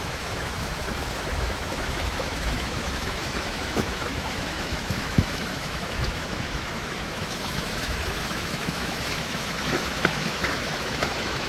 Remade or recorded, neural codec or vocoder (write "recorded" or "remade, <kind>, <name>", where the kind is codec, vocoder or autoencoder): remade, autoencoder, DAC-VAE